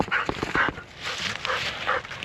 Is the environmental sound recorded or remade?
recorded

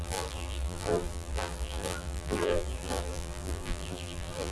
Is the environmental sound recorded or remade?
remade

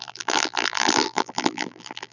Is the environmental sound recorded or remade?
remade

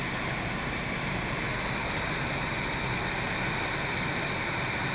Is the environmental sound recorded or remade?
recorded